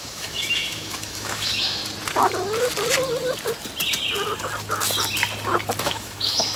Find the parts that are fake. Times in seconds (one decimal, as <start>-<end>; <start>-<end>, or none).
0.0-1.8; 5.8-6.6